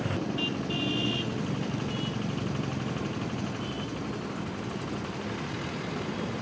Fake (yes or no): no